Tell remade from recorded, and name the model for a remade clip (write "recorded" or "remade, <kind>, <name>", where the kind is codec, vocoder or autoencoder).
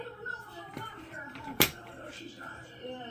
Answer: remade, vocoder, BigVGAN v2